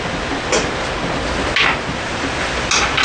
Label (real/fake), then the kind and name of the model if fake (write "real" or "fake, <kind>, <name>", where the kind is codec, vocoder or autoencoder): real